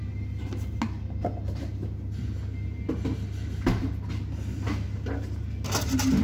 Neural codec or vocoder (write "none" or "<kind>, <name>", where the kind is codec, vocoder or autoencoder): none